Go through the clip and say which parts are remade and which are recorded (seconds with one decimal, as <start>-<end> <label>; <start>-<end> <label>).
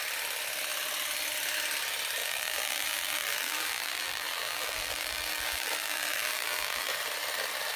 0.0-2.2 recorded; 2.2-6.9 remade; 6.9-7.8 recorded